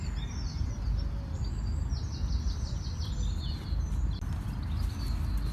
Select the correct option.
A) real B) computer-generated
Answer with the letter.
A